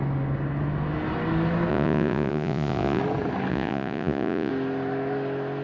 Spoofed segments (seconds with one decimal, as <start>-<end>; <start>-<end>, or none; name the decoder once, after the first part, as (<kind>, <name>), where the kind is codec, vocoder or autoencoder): 1.7-3.0 (vocoder, Vocos); 3.5-4.5